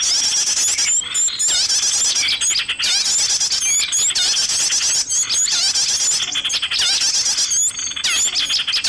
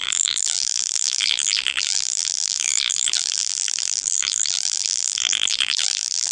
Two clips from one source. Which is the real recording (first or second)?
first